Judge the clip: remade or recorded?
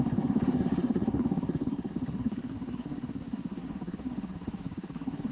remade